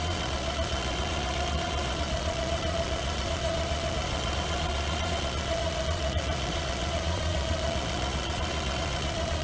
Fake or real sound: fake